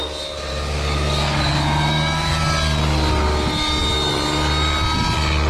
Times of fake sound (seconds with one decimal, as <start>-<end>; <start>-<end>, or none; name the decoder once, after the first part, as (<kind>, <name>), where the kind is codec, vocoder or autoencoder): 0.5-2.3 (codec, DAC)